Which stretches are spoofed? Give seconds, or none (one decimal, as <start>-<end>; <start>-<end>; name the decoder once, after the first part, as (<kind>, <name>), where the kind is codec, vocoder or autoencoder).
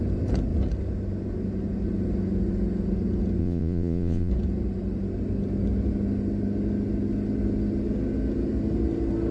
3.4-4.3 (vocoder, Vocos)